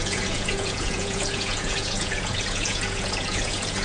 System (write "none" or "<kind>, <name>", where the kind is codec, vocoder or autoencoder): vocoder, Vocos